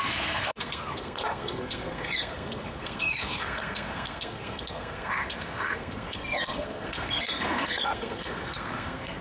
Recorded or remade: remade